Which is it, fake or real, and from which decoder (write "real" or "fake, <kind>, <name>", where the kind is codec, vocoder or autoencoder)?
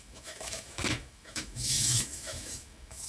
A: fake, autoencoder, DAC-VAE